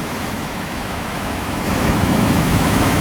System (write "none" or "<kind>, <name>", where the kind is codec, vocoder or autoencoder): autoencoder, DAC-VAE